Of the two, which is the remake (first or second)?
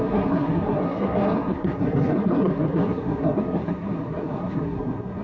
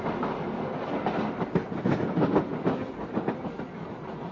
first